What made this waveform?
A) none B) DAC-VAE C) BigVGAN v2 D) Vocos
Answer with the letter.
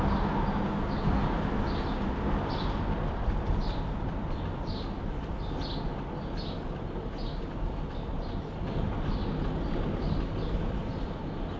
A